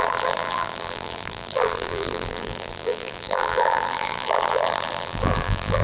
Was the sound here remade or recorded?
remade